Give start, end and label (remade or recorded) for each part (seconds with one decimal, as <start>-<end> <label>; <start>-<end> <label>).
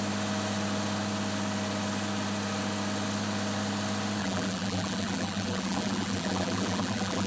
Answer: 0.0-4.2 recorded; 4.2-7.3 remade